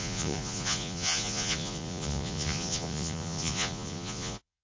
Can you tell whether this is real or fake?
fake